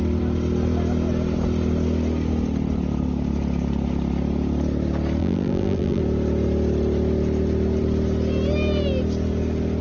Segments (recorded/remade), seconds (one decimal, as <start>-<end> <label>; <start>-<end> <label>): 0.0-5.2 recorded; 5.2-6.0 remade; 6.0-9.8 recorded